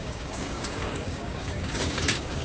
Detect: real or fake fake